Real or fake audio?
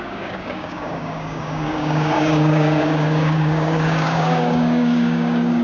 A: fake